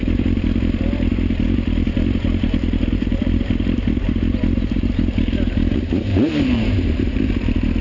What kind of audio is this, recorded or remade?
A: remade